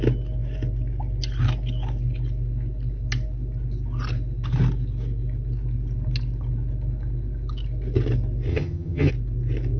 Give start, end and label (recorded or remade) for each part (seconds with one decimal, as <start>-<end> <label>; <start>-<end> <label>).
0.0-8.5 recorded; 8.5-9.1 remade; 9.1-9.8 recorded